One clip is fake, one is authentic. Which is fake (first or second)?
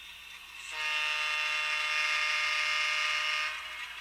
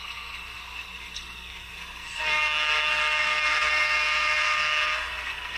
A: second